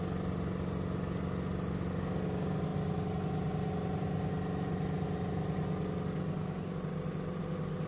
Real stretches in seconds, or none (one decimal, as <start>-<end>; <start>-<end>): 0.0-7.9